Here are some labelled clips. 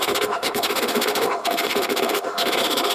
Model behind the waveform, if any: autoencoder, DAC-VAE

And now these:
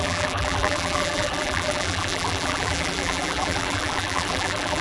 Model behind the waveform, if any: vocoder, BigVGAN v2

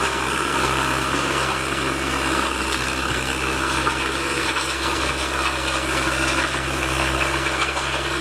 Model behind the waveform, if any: codec, SNAC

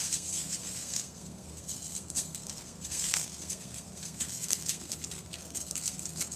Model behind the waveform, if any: codec, SNAC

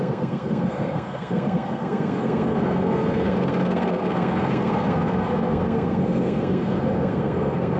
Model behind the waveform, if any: codec, SNAC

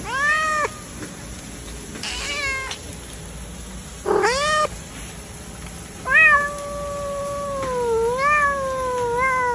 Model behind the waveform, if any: none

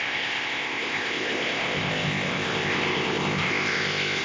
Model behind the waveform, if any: codec, ZipCodec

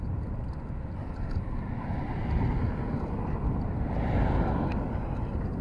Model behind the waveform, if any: none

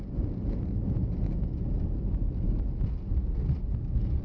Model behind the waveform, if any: none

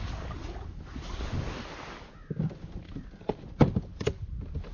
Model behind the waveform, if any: none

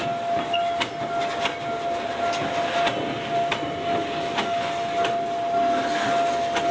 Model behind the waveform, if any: none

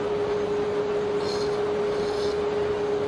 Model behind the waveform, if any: none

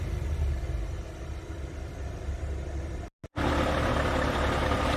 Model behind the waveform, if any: none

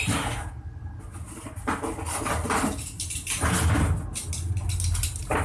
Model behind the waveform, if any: none